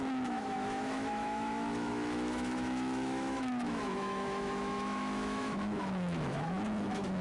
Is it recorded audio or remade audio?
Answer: remade